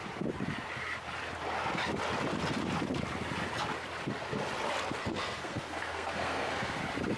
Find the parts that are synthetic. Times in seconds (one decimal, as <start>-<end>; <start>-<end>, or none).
5.0-6.8